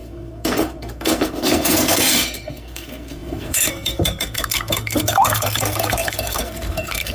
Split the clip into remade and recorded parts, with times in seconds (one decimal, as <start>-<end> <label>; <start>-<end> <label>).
0.0-7.1 remade